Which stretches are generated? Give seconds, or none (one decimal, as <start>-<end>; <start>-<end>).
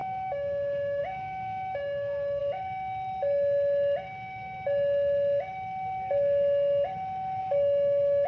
0.0-2.4; 7.4-8.3